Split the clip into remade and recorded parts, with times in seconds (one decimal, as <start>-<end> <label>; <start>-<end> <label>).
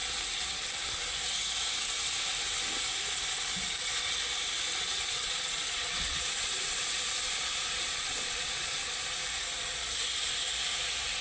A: 0.0-4.8 recorded; 4.8-8.9 remade; 8.9-11.2 recorded